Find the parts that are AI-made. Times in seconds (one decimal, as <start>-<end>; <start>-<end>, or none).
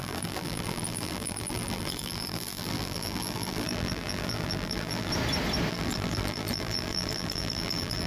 0.0-5.1; 5.7-8.1